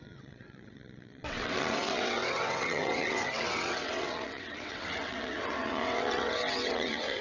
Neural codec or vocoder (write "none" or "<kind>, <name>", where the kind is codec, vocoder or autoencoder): vocoder, WaveNeXt